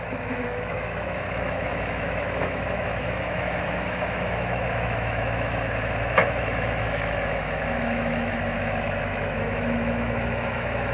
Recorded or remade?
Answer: remade